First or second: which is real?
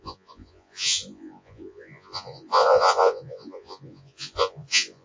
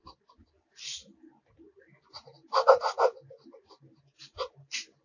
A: second